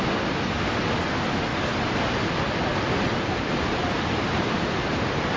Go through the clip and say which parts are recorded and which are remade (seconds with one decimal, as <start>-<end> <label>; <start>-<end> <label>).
0.0-5.4 recorded